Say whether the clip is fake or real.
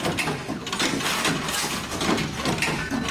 real